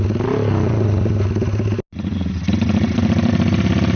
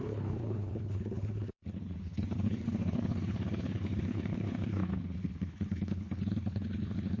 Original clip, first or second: first